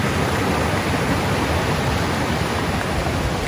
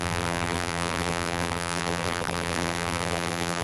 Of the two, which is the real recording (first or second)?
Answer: first